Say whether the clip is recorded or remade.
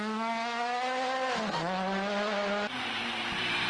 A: recorded